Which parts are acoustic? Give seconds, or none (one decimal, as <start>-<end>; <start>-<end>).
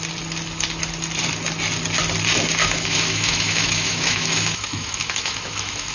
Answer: 0.0-2.6